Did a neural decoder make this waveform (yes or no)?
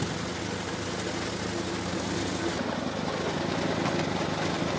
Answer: no